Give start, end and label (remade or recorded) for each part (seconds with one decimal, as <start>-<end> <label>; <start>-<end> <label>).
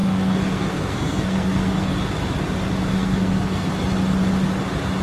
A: 0.0-1.9 remade; 1.9-2.9 recorded; 2.9-3.7 remade; 3.7-5.0 recorded